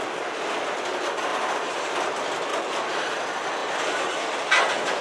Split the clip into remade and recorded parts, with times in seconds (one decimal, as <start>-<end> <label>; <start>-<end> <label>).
0.0-1.3 recorded; 1.3-2.0 remade; 2.0-2.5 recorded; 2.5-3.1 remade; 3.1-5.0 recorded